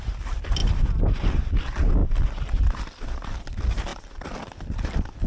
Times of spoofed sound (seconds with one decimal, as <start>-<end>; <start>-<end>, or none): 2.0-3.4; 3.9-5.3